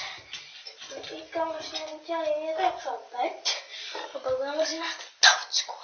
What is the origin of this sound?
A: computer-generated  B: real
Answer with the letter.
B